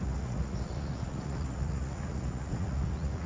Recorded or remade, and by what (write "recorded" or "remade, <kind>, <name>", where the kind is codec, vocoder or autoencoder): remade, vocoder, Vocos